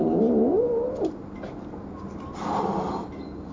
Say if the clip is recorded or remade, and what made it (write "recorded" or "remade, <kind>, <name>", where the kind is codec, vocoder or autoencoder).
recorded